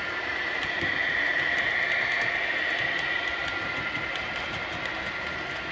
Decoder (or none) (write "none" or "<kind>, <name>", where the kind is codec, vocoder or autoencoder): none